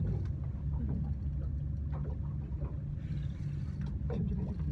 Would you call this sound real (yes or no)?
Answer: yes